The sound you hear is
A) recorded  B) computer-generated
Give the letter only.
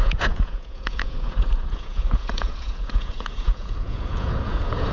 B